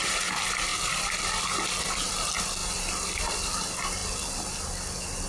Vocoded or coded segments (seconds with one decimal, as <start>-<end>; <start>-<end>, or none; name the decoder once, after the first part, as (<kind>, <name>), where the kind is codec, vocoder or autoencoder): 0.0-0.7 (vocoder, BigVGAN v2); 1.8-2.6; 3.2-4.0